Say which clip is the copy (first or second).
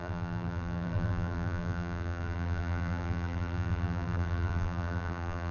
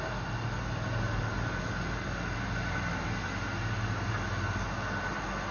first